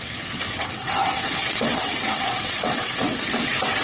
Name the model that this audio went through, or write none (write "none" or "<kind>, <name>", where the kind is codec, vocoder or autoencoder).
vocoder, WaveNeXt